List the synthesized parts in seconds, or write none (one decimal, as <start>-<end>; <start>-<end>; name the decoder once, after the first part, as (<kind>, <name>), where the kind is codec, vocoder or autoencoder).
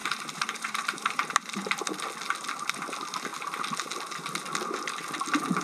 0.0-1.8 (vocoder, BigVGAN v2)